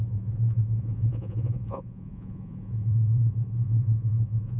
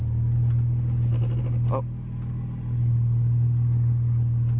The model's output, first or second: first